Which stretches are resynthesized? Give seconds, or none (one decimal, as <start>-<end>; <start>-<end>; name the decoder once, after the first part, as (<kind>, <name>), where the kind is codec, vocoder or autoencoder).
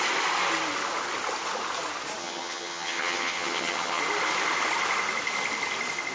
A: 2.2-4.0 (vocoder, HiFi-GAN)